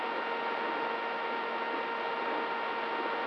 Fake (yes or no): no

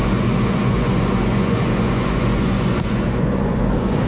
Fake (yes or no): yes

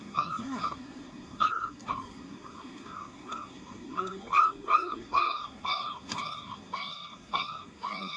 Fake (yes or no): yes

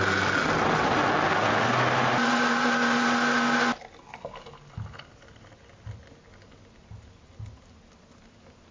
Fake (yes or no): no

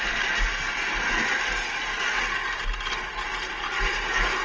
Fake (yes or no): no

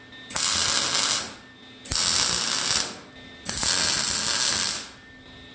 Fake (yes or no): no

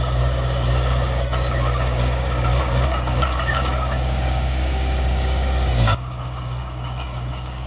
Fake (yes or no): yes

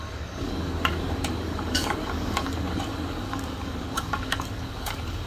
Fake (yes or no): yes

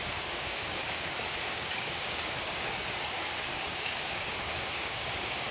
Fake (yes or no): yes